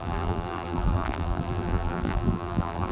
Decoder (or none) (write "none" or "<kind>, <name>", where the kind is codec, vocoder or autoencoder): vocoder, BigVGAN v2